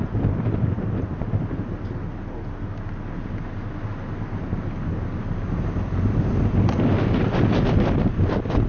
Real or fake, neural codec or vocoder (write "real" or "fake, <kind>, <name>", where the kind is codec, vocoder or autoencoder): real